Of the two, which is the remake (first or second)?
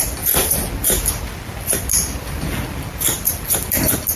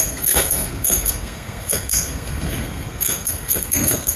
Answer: second